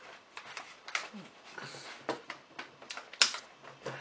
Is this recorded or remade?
recorded